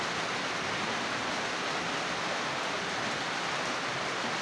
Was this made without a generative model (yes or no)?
yes